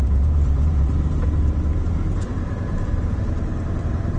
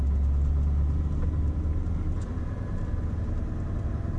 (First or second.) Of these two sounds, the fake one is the first